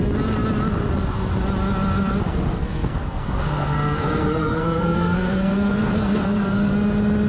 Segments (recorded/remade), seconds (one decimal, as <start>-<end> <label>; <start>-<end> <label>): 0.0-2.3 recorded; 2.3-6.7 remade; 6.7-7.3 recorded